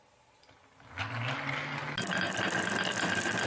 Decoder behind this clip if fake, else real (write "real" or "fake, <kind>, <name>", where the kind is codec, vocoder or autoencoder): real